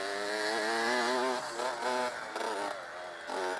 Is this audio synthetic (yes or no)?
no